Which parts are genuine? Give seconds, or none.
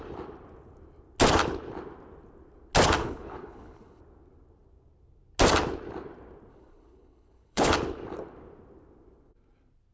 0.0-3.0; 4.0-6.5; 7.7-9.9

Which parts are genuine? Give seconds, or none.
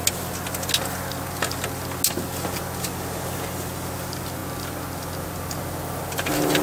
0.0-6.6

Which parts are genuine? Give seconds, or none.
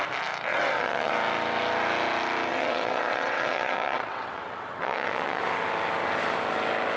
0.0-0.5; 1.1-2.5; 5.4-7.0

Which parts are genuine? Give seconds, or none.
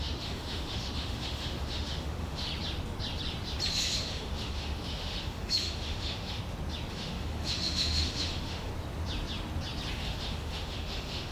2.5-3.7; 6.4-6.9; 8.7-9.9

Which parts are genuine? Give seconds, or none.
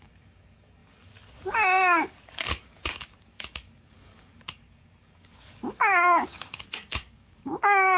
none